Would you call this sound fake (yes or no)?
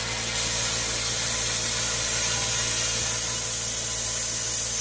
no